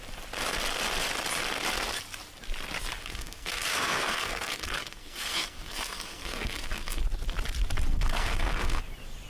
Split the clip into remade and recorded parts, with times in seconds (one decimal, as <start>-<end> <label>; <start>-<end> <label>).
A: 0.0-3.0 recorded; 3.0-7.0 remade; 7.0-7.9 recorded; 7.9-8.8 remade; 8.8-9.3 recorded